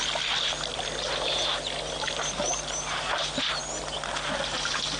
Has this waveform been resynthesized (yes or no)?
no